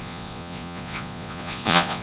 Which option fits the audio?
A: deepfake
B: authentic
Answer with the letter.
A